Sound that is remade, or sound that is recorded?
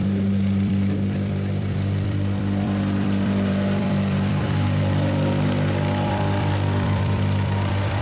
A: remade